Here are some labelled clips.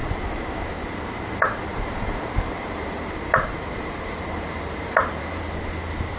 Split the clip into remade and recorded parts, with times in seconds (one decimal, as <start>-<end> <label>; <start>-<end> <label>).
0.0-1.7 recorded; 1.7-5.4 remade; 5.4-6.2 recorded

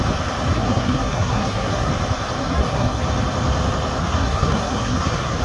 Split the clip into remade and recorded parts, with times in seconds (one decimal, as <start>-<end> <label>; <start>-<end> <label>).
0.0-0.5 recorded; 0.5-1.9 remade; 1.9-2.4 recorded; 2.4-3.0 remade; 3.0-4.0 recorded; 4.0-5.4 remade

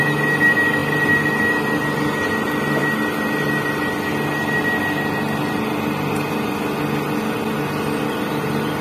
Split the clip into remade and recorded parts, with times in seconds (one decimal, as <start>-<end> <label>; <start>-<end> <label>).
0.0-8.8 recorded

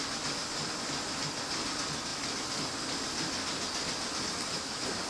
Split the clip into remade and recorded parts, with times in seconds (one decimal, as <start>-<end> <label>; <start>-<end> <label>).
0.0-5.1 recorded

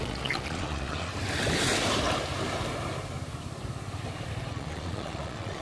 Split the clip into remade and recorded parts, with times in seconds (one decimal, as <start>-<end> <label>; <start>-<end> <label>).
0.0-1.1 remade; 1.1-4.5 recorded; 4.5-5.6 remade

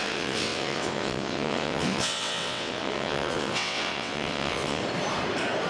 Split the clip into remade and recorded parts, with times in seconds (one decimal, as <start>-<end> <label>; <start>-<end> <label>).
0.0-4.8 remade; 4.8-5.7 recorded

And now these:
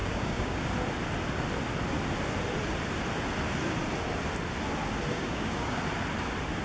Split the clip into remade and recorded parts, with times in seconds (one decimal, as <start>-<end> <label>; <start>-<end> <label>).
0.0-0.6 remade; 0.6-5.1 recorded; 5.1-5.8 remade; 5.8-6.6 recorded